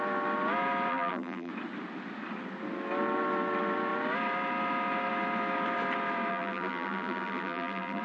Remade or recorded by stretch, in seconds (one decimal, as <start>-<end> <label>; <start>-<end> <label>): 0.0-0.9 recorded; 0.9-1.5 remade; 1.5-6.3 recorded; 6.3-8.0 remade